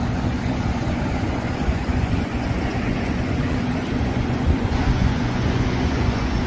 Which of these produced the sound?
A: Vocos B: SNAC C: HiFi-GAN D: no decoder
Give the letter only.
A